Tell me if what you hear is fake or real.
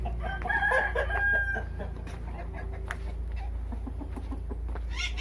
real